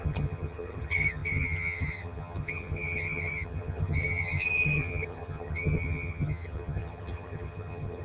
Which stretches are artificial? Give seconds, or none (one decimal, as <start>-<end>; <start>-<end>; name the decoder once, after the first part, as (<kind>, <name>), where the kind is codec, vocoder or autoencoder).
0.0-8.0 (vocoder, HiFi-GAN)